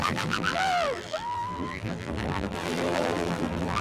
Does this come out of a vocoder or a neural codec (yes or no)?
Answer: yes